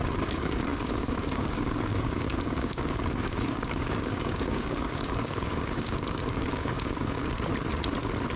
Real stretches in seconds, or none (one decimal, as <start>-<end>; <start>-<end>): 7.5-8.4